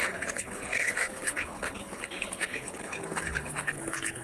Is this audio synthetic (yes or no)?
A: yes